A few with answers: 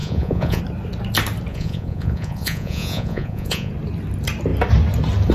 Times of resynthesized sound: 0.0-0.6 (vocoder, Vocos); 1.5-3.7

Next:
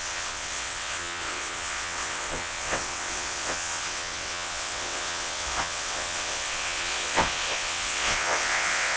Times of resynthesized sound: 0.0-9.0 (vocoder, WaveNeXt)

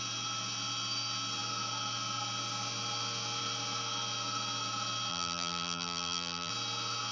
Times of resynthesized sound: 5.1-6.5 (vocoder, BigVGAN v2)

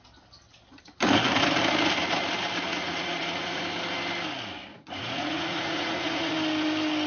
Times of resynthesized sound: 2.7-3.6 (vocoder, Vocos); 4.7-6.3

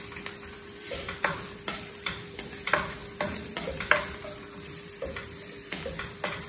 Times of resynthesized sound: 0.0-6.5 (vocoder, BigVGAN v2)

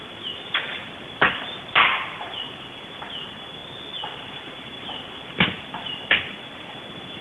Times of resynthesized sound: 0.8-3.1 (vocoder, BigVGAN v2)

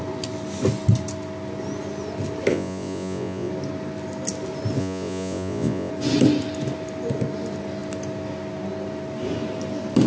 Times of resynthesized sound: 2.5-3.5 (vocoder, Vocos); 4.8-5.9

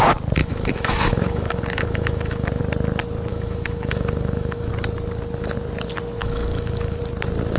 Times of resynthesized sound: 0.4-2.6 (autoencoder, DAC-VAE); 3.3-4.7; 6.2-7.0